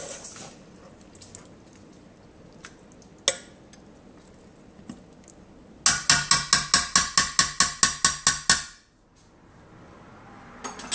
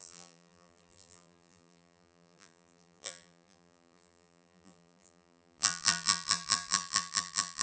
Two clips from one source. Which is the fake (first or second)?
second